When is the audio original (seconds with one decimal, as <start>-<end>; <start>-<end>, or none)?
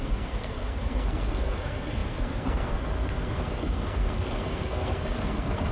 none